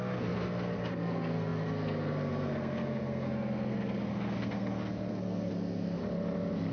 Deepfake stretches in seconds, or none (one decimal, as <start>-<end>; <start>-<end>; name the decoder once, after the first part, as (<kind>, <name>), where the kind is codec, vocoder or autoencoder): 0.0-6.0 (codec, SNAC)